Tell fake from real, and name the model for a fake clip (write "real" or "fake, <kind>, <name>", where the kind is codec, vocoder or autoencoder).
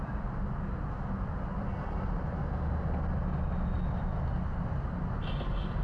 real